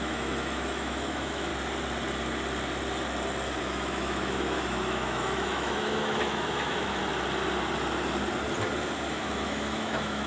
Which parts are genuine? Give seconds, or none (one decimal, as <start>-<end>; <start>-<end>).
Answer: 1.5-3.6; 7.0-9.2